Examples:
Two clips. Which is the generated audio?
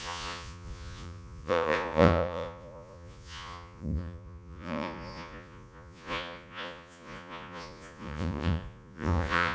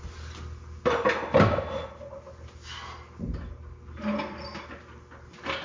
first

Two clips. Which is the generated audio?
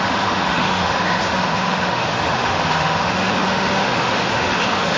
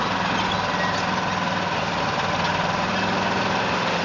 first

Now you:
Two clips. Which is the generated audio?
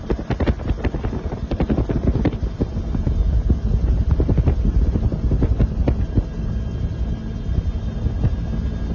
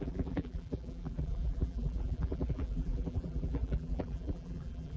second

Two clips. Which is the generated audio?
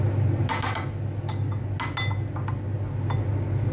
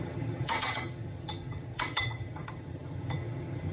second